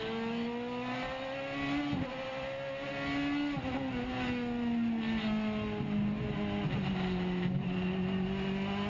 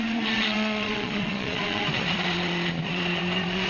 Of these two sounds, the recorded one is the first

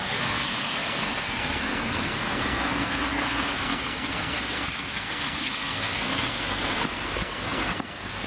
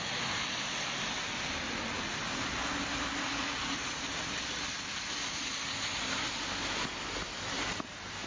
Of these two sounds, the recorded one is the second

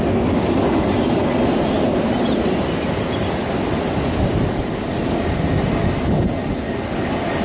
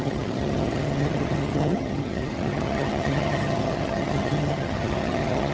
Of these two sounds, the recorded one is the first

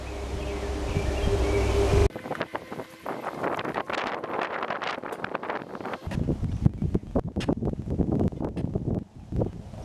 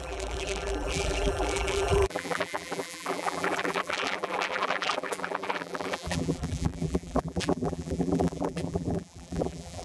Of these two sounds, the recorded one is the first